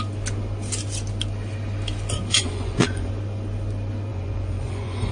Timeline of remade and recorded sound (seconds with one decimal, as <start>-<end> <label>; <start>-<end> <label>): 0.0-2.3 recorded; 2.3-3.1 remade; 3.1-4.1 recorded; 4.1-5.1 remade

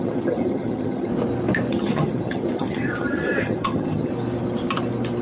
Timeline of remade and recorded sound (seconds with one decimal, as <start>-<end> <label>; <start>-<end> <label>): 0.0-1.1 remade; 1.1-1.7 recorded; 1.7-4.1 remade; 4.1-5.2 recorded

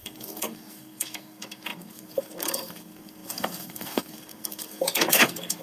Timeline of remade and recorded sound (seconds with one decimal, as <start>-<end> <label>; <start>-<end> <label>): 0.0-5.6 remade

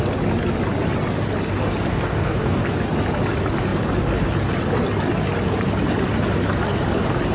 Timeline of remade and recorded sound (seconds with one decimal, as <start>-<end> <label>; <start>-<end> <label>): 0.0-1.9 recorded; 1.9-2.6 remade; 2.6-7.3 recorded

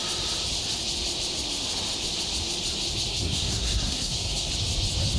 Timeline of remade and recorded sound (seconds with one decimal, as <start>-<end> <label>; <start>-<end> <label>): 0.0-3.1 recorded; 3.1-4.5 remade; 4.5-5.2 recorded

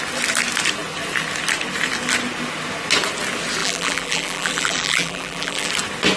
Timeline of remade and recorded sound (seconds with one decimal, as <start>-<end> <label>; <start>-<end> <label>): 0.0-3.6 recorded; 3.6-5.7 remade; 5.7-6.2 recorded

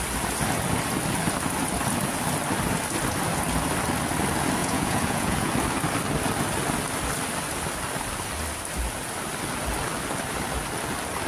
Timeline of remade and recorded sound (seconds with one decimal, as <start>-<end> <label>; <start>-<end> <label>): 0.0-4.6 recorded; 4.6-5.5 remade; 5.5-11.3 recorded